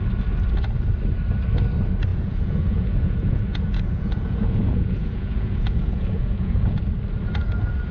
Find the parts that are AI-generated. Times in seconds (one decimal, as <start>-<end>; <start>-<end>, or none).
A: 2.1-6.8